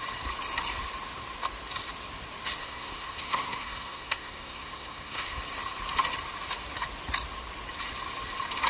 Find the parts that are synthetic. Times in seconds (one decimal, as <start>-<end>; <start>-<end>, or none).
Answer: 2.6-5.4